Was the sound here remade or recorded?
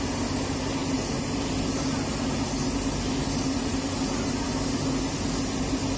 recorded